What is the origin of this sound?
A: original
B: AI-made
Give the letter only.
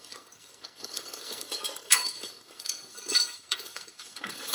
B